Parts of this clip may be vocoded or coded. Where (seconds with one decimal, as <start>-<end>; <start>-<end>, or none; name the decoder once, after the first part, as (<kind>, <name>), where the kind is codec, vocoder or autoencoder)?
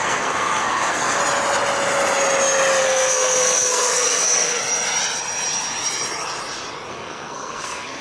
0.0-1.2 (codec, SNAC); 2.8-4.6; 6.9-8.0